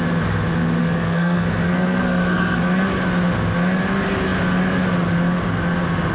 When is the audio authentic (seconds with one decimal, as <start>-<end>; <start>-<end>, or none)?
0.0-0.8; 2.6-6.1